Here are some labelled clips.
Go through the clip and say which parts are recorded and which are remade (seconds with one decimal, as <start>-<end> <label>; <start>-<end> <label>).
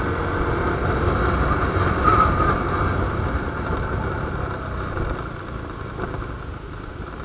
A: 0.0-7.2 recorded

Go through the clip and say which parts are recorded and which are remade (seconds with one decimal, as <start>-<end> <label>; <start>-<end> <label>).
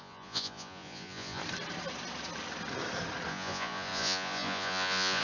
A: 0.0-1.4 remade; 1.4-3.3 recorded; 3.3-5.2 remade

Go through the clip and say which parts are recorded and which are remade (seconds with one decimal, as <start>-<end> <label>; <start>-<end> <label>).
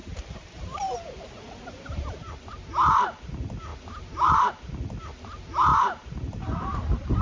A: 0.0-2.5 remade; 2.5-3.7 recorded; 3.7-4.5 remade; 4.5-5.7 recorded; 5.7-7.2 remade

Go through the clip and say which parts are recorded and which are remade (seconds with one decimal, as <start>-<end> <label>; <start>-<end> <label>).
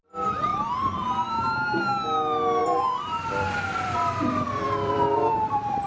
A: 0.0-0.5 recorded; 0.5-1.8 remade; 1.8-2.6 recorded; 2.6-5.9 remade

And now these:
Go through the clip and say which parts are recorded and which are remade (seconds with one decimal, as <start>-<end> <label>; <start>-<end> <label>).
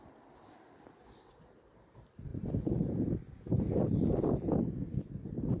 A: 0.0-5.6 recorded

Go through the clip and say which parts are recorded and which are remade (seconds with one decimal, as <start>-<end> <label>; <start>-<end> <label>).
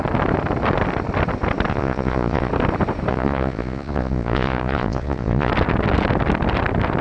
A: 0.0-1.7 recorded; 1.7-2.5 remade; 2.5-3.1 recorded; 3.1-5.5 remade; 5.5-7.0 recorded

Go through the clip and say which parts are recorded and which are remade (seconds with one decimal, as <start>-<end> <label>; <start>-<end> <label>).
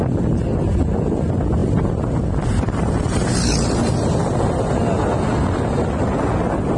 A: 0.0-6.8 recorded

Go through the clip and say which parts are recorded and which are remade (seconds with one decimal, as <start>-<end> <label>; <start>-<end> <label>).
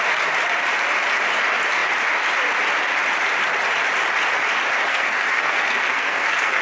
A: 0.0-4.9 recorded; 4.9-6.6 remade